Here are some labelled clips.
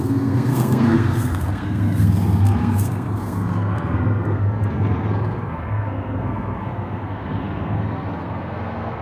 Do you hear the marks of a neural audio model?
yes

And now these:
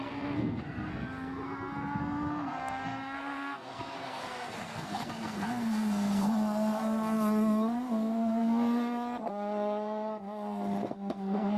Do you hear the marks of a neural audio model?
yes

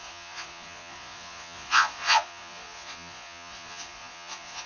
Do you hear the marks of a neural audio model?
yes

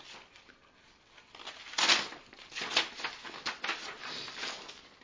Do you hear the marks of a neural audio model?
no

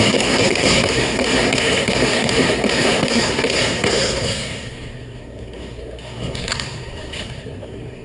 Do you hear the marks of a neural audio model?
yes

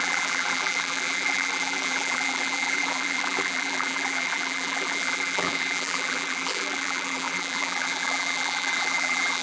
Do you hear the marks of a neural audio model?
yes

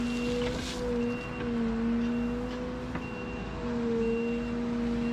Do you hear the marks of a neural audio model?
no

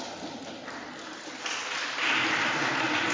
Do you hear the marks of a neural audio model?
no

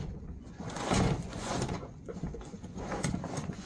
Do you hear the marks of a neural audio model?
yes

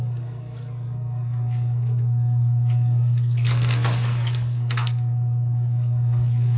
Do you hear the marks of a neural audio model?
yes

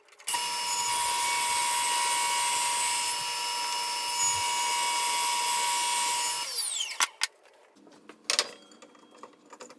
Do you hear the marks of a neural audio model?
no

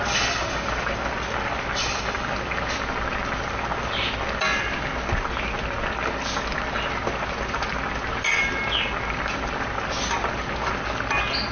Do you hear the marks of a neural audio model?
no